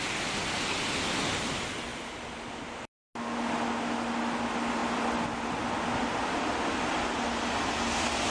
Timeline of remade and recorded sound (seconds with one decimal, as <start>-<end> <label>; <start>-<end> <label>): 0.0-8.3 recorded